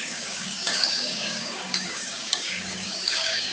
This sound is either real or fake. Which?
fake